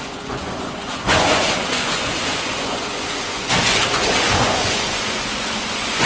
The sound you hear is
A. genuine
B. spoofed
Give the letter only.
B